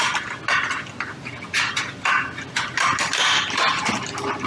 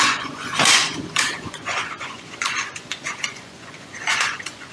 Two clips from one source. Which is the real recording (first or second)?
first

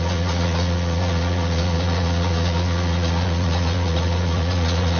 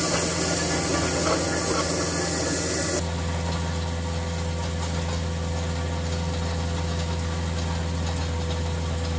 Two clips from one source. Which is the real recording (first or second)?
second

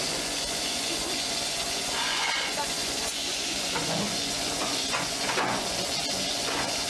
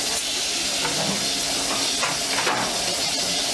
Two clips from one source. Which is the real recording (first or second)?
second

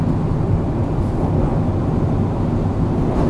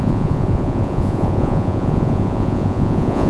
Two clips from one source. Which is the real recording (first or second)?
first